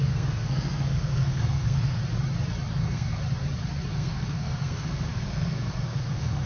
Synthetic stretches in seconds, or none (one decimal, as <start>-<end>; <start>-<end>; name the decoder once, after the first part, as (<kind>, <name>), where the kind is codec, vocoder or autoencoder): 0.0-2.0 (codec, SNAC); 2.7-3.2; 3.9-6.5